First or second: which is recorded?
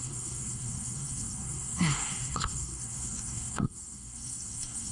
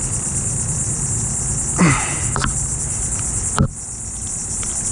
second